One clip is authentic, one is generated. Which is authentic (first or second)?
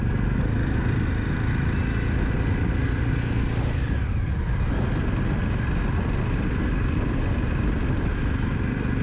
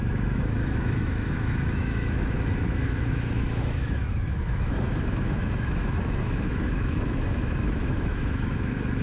first